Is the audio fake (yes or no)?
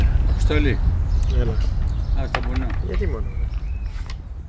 no